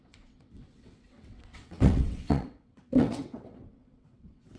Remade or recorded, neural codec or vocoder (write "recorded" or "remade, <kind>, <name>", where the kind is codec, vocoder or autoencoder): remade, vocoder, WaveNeXt